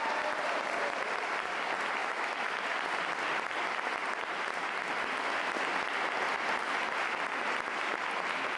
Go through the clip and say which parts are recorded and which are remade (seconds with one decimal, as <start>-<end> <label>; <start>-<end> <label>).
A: 0.0-2.0 recorded; 2.0-2.5 remade; 2.5-8.6 recorded

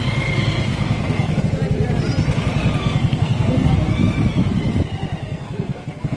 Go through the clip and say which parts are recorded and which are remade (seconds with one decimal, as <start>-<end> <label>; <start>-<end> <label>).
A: 0.0-0.7 recorded; 0.7-1.4 remade; 1.4-2.8 recorded; 2.8-3.7 remade; 3.7-5.2 recorded; 5.2-6.2 remade

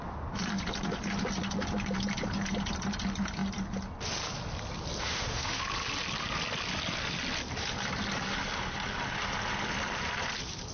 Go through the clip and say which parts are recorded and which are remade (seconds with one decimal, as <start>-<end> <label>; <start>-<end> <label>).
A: 0.0-5.0 recorded; 5.0-5.6 remade; 5.6-10.7 recorded